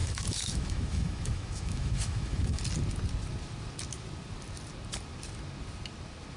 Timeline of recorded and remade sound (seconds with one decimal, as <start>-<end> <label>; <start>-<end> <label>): 0.0-2.6 remade; 2.6-6.4 recorded